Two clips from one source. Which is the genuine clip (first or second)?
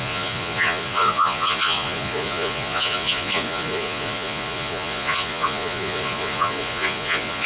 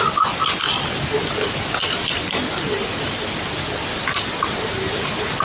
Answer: second